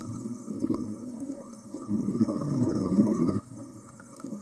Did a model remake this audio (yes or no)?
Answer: yes